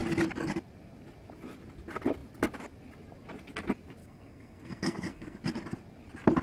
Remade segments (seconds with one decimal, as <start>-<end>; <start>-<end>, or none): 4.0-5.4